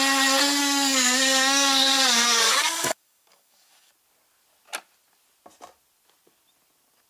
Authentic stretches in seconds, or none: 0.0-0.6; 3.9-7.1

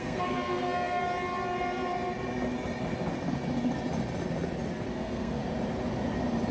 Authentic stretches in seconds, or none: 1.0-4.9; 5.4-6.5

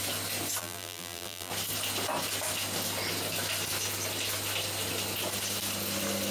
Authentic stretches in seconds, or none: 0.0-0.6; 1.5-6.3